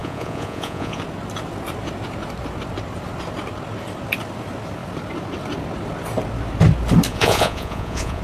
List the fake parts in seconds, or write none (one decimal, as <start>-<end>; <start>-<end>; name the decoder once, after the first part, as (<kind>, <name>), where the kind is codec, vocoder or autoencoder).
0.0-1.0 (vocoder, Vocos); 7.1-8.2